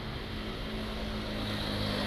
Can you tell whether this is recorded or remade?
recorded